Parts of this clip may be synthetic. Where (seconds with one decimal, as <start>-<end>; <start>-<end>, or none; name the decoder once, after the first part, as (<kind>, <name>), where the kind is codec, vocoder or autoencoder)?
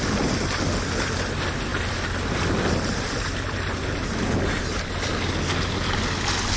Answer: none